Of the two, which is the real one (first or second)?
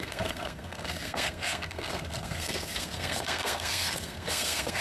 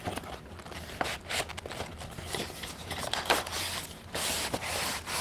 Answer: second